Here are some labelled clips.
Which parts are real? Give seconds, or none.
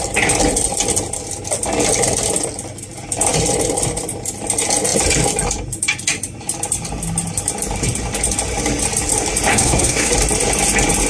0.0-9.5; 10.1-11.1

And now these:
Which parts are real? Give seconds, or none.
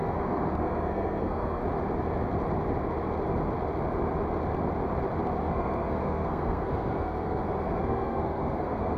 1.6-5.4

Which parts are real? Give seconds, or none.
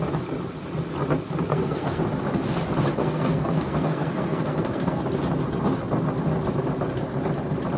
0.0-1.5; 2.0-3.0; 5.0-7.8